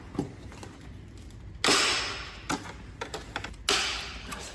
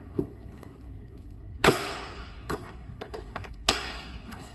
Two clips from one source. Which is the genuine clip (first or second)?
first